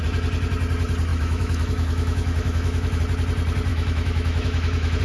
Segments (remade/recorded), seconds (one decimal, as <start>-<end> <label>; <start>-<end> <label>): 0.0-1.1 recorded; 1.1-3.0 remade; 3.0-3.7 recorded; 3.7-5.0 remade